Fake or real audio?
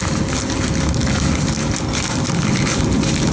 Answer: real